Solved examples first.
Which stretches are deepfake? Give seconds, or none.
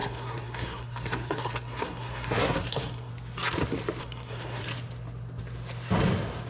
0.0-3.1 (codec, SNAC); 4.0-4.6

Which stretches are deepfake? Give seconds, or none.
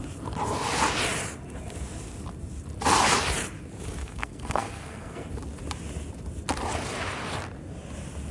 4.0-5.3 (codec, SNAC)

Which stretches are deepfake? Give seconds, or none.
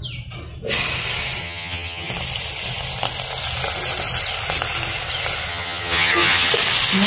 1.4-2.1 (vocoder, HiFi-GAN); 5.5-6.5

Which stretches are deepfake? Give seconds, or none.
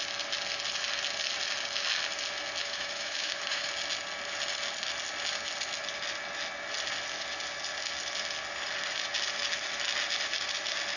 2.6-3.7 (autoencoder, DAC-VAE)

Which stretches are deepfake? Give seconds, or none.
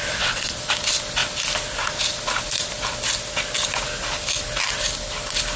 0.0-0.5 (vocoder, WaveNeXt)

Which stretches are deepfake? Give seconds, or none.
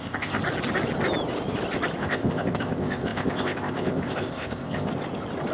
0.0-0.4 (codec, ZipCodec); 2.0-4.9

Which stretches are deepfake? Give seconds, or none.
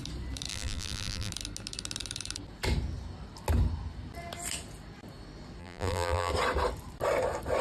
0.5-1.3 (vocoder, BigVGAN v2); 5.6-6.3